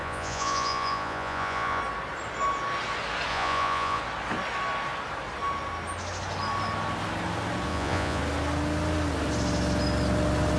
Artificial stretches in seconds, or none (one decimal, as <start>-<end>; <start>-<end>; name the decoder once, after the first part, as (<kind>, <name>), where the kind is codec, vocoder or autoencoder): 0.0-1.8 (vocoder, Vocos); 3.3-4.0; 7.7-8.2